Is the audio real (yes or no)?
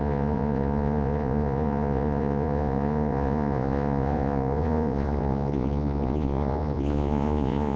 no